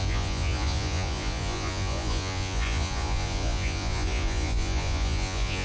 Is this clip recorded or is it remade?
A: remade